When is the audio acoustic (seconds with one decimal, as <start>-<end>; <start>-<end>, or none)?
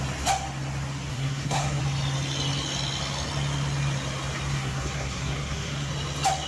0.0-1.1; 1.8-4.5; 5.9-6.5